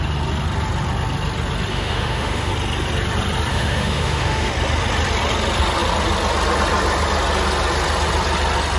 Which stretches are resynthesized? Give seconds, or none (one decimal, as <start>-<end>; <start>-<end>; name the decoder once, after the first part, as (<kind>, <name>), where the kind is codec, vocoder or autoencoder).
1.7-2.5 (autoencoder, DAC-VAE); 3.5-4.5